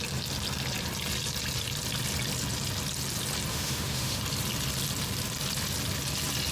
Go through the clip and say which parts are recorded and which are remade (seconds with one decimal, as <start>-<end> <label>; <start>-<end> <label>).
0.0-3.5 recorded; 3.5-4.2 remade; 4.2-6.5 recorded